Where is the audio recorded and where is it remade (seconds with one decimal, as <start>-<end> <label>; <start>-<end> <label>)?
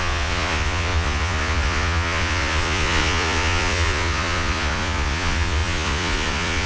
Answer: 0.0-6.7 remade